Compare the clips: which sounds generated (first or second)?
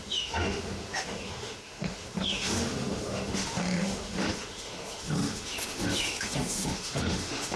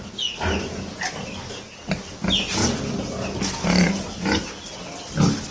first